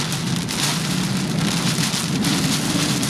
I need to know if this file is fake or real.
real